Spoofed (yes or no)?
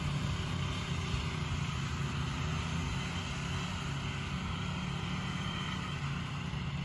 no